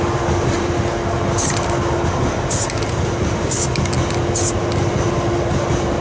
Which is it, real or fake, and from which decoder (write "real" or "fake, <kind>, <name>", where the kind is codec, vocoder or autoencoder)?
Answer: real